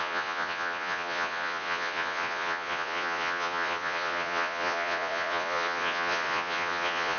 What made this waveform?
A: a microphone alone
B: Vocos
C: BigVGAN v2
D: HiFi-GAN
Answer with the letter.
B